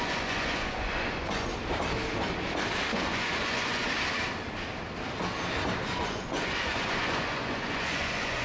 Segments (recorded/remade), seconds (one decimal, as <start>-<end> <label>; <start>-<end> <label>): 0.0-1.5 remade; 1.5-2.9 recorded; 2.9-3.8 remade; 3.8-6.0 recorded; 6.0-8.4 remade